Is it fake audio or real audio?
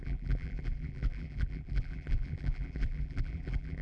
fake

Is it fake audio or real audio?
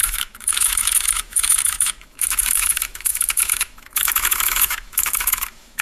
fake